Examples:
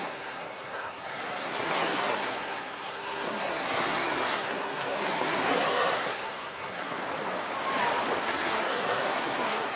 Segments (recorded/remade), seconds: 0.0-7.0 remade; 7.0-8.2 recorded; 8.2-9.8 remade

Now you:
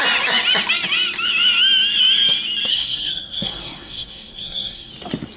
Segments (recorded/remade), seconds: 0.0-2.7 recorded; 2.7-4.9 remade; 4.9-5.4 recorded

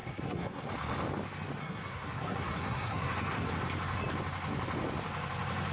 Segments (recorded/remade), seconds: 0.0-0.7 remade; 0.7-1.6 recorded; 1.6-3.5 remade; 3.5-5.7 recorded

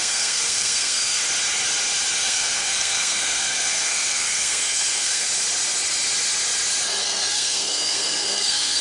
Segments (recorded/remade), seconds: 0.0-1.2 remade; 1.2-2.2 recorded; 2.2-5.3 remade; 5.3-7.0 recorded; 7.0-8.8 remade